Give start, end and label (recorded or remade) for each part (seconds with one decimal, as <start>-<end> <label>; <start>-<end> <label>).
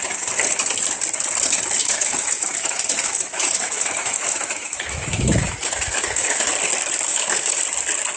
0.0-1.8 recorded; 1.8-6.5 remade; 6.5-7.1 recorded; 7.1-7.6 remade; 7.6-8.2 recorded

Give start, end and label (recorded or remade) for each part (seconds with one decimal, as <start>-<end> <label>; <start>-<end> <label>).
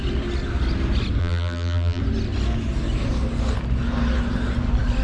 0.0-1.2 recorded; 1.2-2.0 remade; 2.0-5.0 recorded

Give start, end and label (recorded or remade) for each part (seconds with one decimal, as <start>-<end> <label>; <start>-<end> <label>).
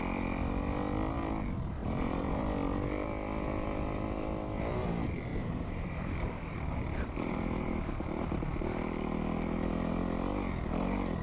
0.0-1.8 recorded; 1.8-2.4 remade; 2.4-5.3 recorded; 5.3-8.5 remade; 8.5-11.2 recorded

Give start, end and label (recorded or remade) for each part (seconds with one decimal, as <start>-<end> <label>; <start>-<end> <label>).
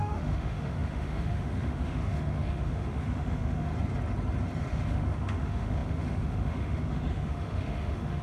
0.0-3.7 remade; 3.7-4.6 recorded; 4.6-8.2 remade